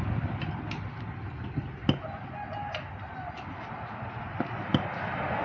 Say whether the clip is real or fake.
real